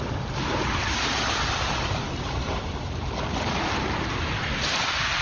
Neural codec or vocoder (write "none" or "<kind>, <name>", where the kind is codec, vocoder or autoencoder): none